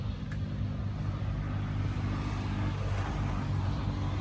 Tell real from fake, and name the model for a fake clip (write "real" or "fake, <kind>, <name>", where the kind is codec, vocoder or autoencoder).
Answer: real